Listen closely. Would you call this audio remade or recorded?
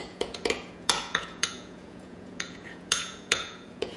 remade